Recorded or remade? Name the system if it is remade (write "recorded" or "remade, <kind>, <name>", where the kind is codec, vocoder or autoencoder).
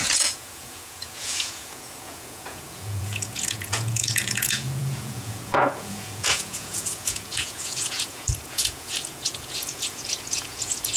remade, vocoder, Vocos